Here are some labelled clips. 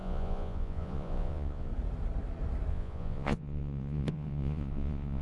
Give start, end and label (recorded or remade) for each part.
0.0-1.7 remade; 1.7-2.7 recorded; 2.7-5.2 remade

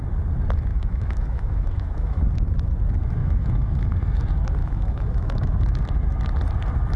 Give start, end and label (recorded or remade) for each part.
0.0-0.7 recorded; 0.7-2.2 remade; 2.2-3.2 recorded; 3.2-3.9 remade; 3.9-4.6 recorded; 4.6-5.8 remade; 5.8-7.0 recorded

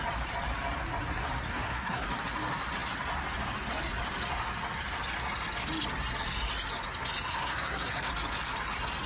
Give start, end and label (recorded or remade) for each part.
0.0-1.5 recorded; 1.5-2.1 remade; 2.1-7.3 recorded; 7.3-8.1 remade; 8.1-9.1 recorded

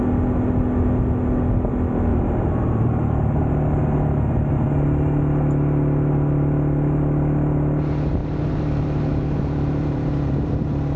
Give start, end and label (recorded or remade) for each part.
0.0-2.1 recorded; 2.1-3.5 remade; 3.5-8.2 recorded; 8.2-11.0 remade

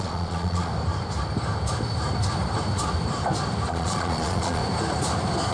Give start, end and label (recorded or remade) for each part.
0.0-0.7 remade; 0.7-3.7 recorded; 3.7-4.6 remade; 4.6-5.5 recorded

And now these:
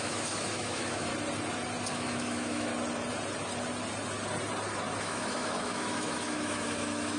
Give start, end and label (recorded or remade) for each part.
0.0-1.1 remade; 1.1-1.9 recorded; 1.9-2.7 remade; 2.7-5.0 recorded; 5.0-7.2 remade